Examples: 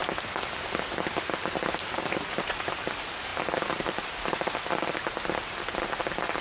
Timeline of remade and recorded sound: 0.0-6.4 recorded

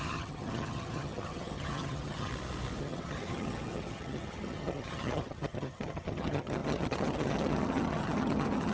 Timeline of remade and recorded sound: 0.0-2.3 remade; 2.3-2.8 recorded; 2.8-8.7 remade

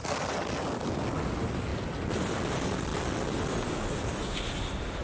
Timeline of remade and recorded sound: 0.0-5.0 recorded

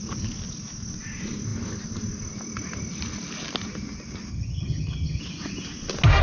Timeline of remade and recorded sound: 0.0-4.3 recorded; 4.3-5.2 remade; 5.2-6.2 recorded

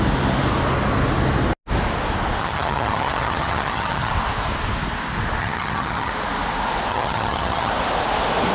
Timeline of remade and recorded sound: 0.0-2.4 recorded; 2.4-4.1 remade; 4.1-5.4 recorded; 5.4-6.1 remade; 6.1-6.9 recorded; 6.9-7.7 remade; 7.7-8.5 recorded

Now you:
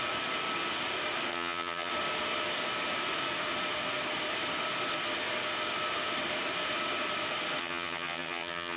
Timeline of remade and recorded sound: 0.0-1.3 recorded; 1.3-1.9 remade; 1.9-7.6 recorded; 7.6-8.8 remade

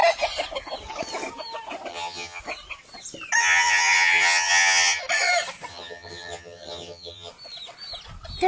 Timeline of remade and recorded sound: 0.0-1.9 recorded; 1.9-2.4 remade; 2.4-3.4 recorded; 3.4-5.0 remade; 5.0-5.7 recorded; 5.7-7.3 remade; 7.3-8.5 recorded